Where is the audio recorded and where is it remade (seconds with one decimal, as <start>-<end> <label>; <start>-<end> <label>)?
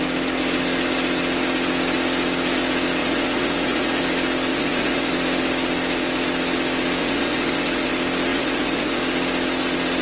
0.0-3.0 recorded; 3.0-4.0 remade; 4.0-4.5 recorded; 4.5-5.1 remade; 5.1-7.0 recorded; 7.0-7.9 remade; 7.9-8.3 recorded; 8.3-9.0 remade; 9.0-10.0 recorded